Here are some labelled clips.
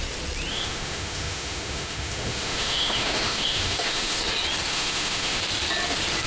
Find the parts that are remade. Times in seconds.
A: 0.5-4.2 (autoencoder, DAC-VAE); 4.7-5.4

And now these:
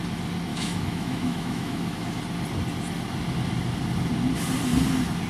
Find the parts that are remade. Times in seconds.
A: 0.5-2.2 (autoencoder, DAC-VAE)

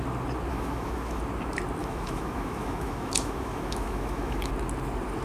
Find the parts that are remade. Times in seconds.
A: 0.5-1.2 (autoencoder, DAC-VAE); 1.8-4.5

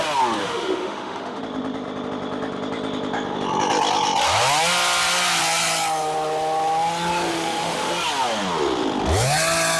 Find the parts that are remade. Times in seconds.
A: 0.4-1.4 (autoencoder, DAC-VAE); 7.3-7.9

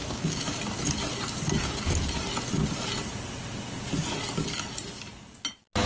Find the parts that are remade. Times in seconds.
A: 0.0-0.6 (autoencoder, DAC-VAE)

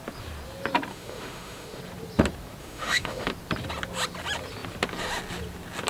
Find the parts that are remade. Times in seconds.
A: 0.9-1.8 (autoencoder, DAC-VAE); 2.6-3.3

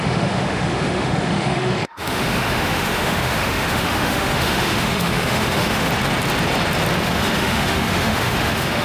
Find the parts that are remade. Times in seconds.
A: 0.0-5.9 (autoencoder, DAC-VAE); 7.0-8.8

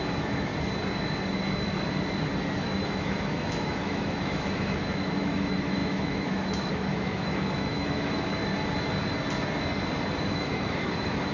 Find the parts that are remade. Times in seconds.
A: 0.0-0.5 (autoencoder, DAC-VAE); 2.6-8.4; 10.2-11.3